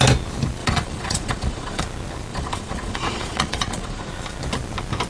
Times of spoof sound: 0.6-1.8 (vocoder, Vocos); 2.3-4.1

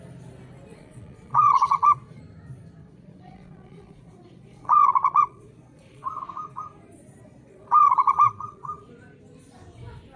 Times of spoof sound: 0.7-2.2 (vocoder, Vocos); 2.8-6.2; 7.2-8.9

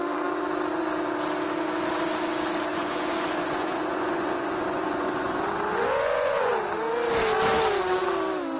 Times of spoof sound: 2.7-6.5 (vocoder, Vocos)

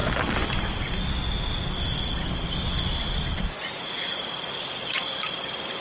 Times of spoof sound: none

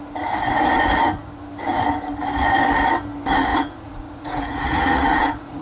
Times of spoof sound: 3.5-5.6 (vocoder, Vocos)

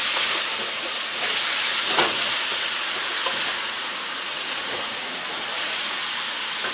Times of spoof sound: 0.0-6.7 (vocoder, Vocos)

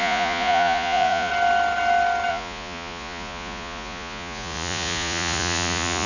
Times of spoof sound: 0.0-1.3 (vocoder, Vocos); 2.3-6.1